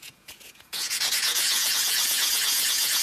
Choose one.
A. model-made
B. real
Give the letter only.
A